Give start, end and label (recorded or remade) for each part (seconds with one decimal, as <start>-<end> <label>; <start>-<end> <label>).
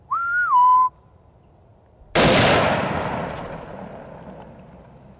0.0-5.2 recorded